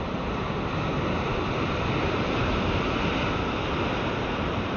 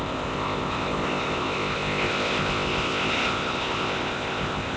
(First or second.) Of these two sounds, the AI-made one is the second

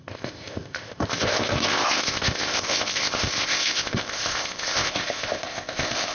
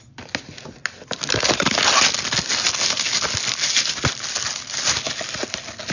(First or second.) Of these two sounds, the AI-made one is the first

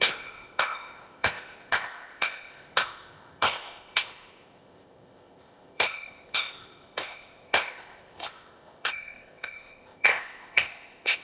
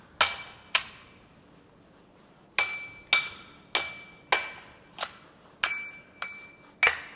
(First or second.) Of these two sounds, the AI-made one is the first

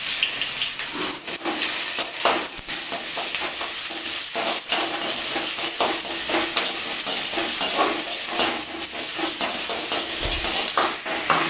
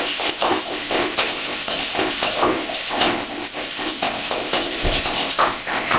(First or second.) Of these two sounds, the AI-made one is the second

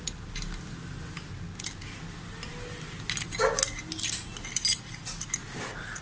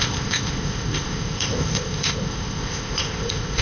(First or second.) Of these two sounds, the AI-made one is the second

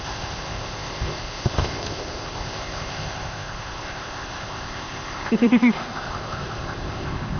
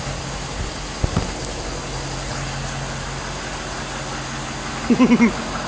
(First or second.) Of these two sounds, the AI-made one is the first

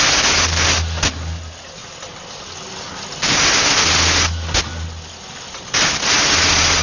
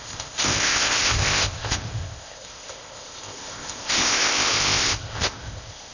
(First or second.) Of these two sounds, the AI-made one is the second